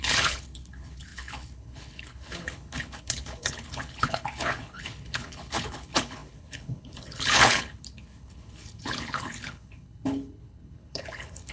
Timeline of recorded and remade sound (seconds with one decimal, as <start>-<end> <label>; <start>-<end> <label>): 0.0-11.5 remade